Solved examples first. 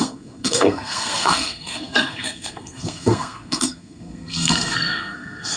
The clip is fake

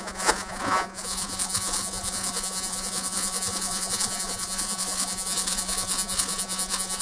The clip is fake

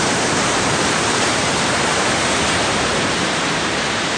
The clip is fake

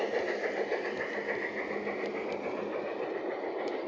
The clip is real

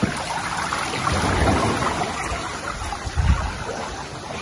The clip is real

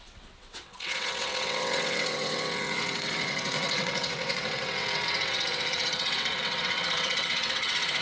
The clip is fake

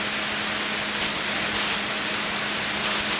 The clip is real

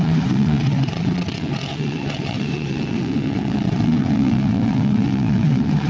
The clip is fake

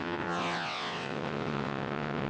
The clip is fake